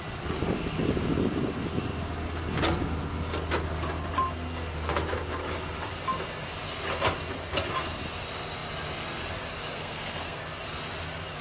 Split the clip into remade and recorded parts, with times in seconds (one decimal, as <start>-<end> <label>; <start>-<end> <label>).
0.0-9.7 recorded; 9.7-10.4 remade; 10.4-11.4 recorded